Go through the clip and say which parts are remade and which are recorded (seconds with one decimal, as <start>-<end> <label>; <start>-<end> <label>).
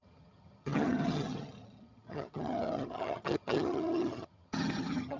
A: 0.0-5.2 remade